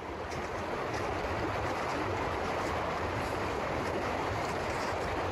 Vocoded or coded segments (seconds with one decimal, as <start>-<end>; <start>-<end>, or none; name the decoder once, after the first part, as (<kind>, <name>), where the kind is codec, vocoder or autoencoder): 1.9-5.3 (vocoder, BigVGAN v2)